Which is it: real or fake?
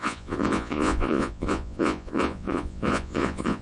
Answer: fake